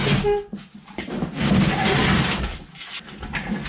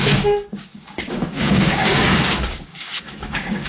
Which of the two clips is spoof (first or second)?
second